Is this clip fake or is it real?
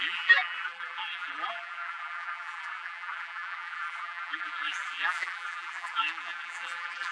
fake